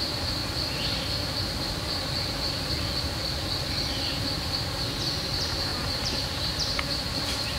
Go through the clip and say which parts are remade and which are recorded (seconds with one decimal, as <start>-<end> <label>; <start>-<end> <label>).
0.0-0.4 remade; 0.4-4.2 recorded; 4.2-7.6 remade

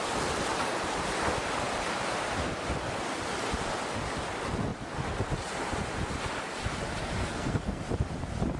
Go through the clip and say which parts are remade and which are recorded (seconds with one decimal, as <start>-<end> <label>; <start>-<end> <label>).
0.0-7.2 recorded; 7.2-7.8 remade; 7.8-8.6 recorded

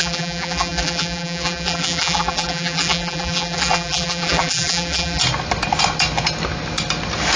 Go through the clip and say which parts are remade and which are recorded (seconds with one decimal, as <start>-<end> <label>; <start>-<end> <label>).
0.0-5.2 remade; 5.2-7.4 recorded

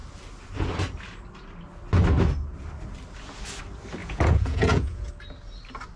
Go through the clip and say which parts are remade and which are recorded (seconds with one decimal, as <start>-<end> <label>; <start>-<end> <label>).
0.0-4.0 recorded; 4.0-5.1 remade; 5.1-6.0 recorded

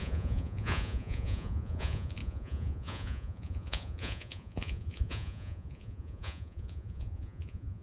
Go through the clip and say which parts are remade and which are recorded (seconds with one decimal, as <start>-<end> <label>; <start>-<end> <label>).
0.0-7.8 remade

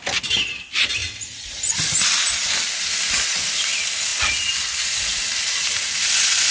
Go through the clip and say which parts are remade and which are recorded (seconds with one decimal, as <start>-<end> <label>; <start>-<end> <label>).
0.0-6.5 recorded